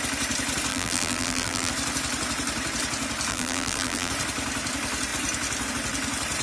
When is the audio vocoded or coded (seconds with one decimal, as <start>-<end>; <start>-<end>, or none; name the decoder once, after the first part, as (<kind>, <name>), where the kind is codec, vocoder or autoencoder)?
0.7-1.7 (vocoder, BigVGAN v2); 3.3-4.1